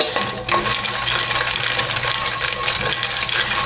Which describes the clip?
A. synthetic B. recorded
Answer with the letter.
B